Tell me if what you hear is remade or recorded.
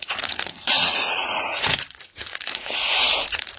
remade